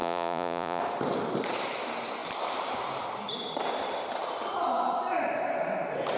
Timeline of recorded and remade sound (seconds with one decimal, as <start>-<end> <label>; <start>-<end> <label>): 0.0-0.8 remade; 0.8-6.2 recorded

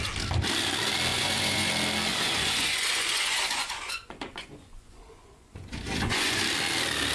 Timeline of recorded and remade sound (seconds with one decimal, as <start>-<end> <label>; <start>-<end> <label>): 0.0-1.1 recorded; 1.1-1.7 remade; 1.7-2.1 recorded; 2.1-6.4 remade; 6.4-7.1 recorded

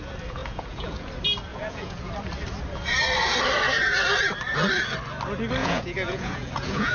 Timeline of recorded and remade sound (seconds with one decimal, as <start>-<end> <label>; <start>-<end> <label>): 0.0-0.4 recorded; 0.4-1.1 remade; 1.1-1.5 recorded; 1.5-2.1 remade; 2.1-5.6 recorded; 5.6-6.9 remade

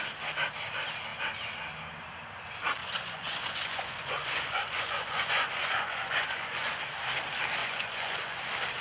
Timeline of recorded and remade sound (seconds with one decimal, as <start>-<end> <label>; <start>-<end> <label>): 0.0-2.8 recorded; 2.8-6.7 remade; 6.7-7.6 recorded; 7.6-8.4 remade; 8.4-8.8 recorded

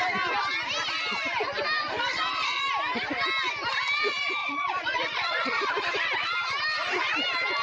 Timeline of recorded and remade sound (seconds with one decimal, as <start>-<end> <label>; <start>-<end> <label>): 0.0-2.1 recorded; 2.1-2.6 remade; 2.6-4.4 recorded; 4.4-5.7 remade; 5.7-7.6 recorded

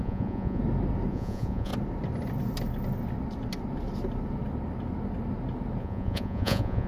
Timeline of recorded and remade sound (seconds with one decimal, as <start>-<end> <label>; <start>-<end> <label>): 0.0-0.6 remade; 0.6-1.1 recorded; 1.1-1.7 remade; 1.7-5.8 recorded; 5.8-6.9 remade

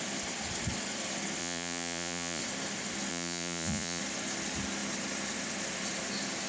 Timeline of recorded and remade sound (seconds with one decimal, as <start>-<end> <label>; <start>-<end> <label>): 0.0-1.4 recorded; 1.4-2.4 remade; 2.4-3.1 recorded; 3.1-4.0 remade; 4.0-6.5 recorded

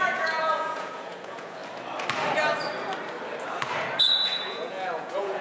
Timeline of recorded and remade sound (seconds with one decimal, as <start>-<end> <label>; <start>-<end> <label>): 0.0-1.6 remade; 1.6-4.0 recorded; 4.0-5.4 remade